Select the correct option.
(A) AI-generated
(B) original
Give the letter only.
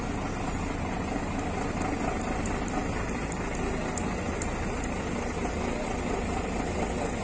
B